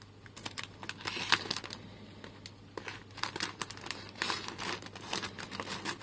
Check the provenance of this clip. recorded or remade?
recorded